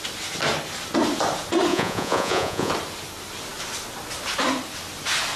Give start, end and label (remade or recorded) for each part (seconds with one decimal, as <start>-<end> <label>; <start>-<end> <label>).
0.0-1.7 recorded; 1.7-2.7 remade; 2.7-5.4 recorded